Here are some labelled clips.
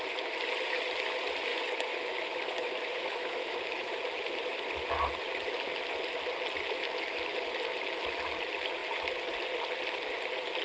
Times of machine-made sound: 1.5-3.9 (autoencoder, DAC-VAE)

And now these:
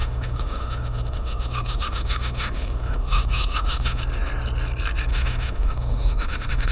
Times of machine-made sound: 0.0-4.0 (autoencoder, DAC-VAE); 5.1-6.7

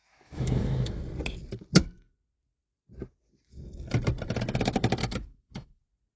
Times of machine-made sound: 0.0-0.9 (autoencoder, DAC-VAE); 5.0-5.8

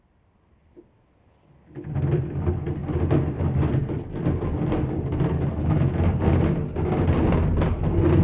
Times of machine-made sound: none

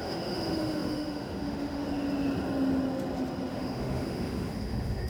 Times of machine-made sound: 0.0-1.8 (autoencoder, DAC-VAE); 3.5-5.1

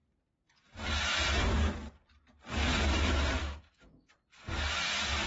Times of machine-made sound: 3.4-4.1 (autoencoder, DAC-VAE)